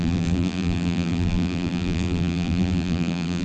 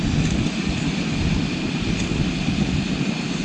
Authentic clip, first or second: second